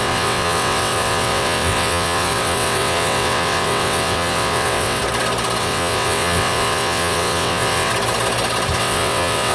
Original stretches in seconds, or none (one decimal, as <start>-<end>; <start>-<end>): 5.0-5.6; 7.9-8.8